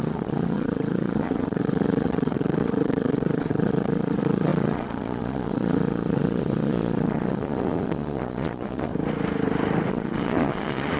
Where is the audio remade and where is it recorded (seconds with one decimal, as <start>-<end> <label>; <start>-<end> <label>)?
0.0-8.9 remade; 8.9-9.9 recorded; 9.9-11.0 remade